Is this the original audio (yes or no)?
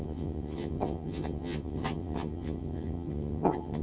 no